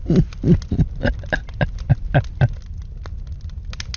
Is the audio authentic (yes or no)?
yes